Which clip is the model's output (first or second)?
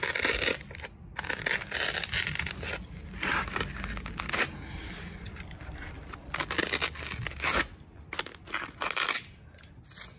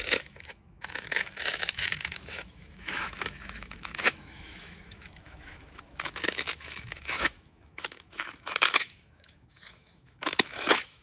second